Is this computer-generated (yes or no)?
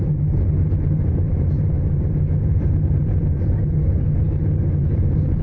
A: yes